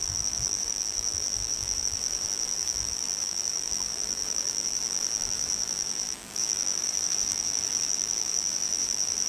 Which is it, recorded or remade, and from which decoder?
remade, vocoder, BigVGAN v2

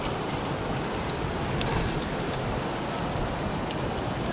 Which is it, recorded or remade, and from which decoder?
recorded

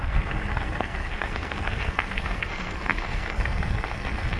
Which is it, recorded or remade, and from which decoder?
remade, codec, SNAC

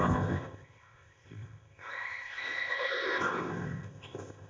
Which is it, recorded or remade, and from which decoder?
remade, codec, ZipCodec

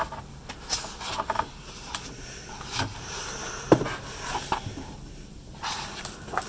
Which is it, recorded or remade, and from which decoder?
recorded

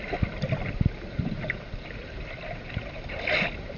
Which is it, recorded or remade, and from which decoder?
recorded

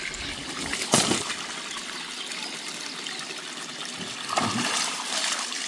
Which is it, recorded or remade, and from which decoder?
recorded